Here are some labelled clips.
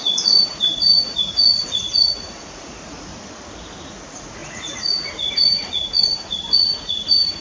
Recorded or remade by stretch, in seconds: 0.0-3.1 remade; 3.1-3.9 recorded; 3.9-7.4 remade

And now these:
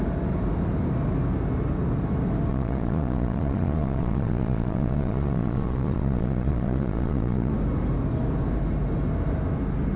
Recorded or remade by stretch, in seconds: 0.0-2.5 recorded; 2.5-7.5 remade; 7.5-10.0 recorded